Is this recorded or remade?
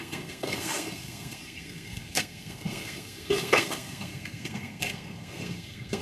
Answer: remade